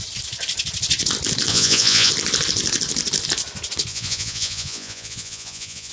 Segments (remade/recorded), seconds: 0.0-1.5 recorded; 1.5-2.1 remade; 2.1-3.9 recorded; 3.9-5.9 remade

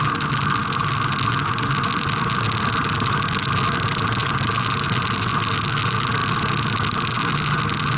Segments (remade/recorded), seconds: 0.0-8.0 recorded

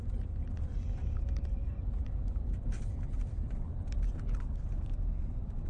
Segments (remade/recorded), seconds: 0.0-0.7 recorded; 0.7-4.1 remade; 4.1-5.7 recorded

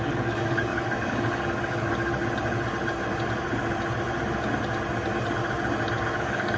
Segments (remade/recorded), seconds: 0.0-2.1 remade; 2.1-6.1 recorded; 6.1-6.6 remade

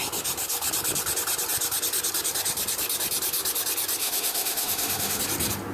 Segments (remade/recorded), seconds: 0.0-4.0 recorded; 4.0-5.2 remade; 5.2-5.7 recorded

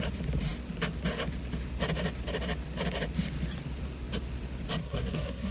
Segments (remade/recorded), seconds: 0.0-4.8 recorded; 4.8-5.5 remade

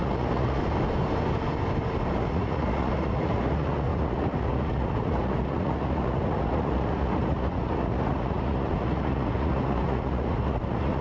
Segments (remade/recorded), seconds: 0.0-0.6 remade; 0.6-2.2 recorded; 2.2-11.0 remade